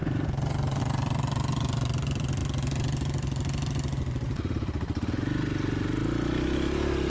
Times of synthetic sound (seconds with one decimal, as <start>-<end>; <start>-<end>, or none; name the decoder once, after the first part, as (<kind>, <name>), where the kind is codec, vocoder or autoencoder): 0.0-2.4 (vocoder, BigVGAN v2)

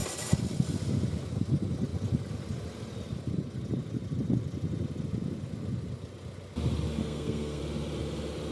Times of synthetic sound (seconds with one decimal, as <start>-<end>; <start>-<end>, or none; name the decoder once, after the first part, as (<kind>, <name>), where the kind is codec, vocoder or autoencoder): 7.0-7.6 (codec, SNAC)